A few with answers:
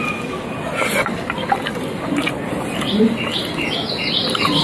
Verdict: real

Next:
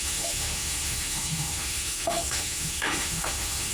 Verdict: fake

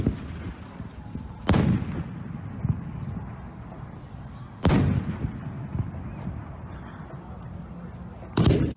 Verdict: real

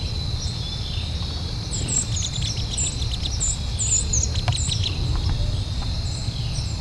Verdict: real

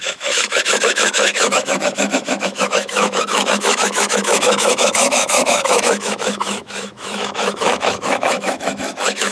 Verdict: fake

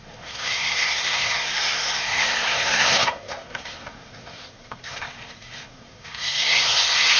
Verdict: fake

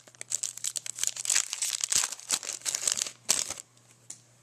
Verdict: real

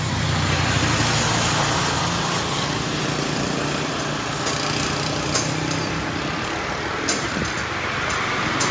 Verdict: real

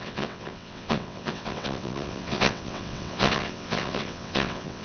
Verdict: fake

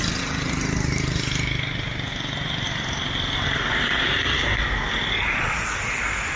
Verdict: real